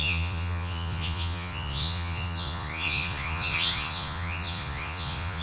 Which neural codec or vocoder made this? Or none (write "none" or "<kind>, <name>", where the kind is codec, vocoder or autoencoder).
vocoder, Vocos